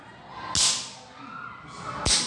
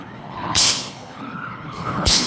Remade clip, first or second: second